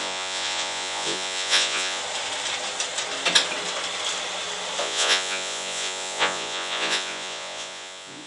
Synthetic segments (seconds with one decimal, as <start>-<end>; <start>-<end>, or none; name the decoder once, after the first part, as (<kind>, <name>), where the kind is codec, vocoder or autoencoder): 0.0-2.0 (vocoder, Vocos); 4.8-8.3

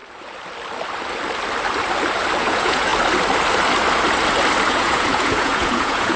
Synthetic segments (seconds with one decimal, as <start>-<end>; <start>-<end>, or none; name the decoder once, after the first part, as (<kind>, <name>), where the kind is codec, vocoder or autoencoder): 2.4-2.9 (vocoder, Vocos); 4.7-6.2

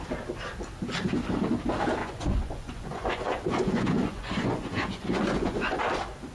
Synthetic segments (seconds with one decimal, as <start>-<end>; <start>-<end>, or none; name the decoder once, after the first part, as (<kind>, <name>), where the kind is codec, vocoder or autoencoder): 2.0-5.8 (vocoder, Vocos)

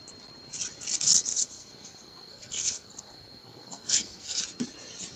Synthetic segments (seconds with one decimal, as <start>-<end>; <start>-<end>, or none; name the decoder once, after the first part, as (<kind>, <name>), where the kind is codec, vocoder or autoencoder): 1.3-4.4 (codec, SNAC)

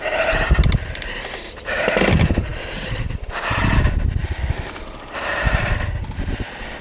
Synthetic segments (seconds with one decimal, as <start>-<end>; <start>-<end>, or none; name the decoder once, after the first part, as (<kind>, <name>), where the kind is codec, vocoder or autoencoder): 2.5-3.4 (vocoder, BigVGAN v2); 4.2-6.0

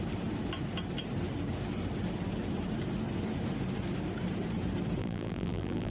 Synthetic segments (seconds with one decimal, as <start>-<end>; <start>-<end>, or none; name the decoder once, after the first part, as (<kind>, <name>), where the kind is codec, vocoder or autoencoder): 5.0-5.9 (vocoder, BigVGAN v2)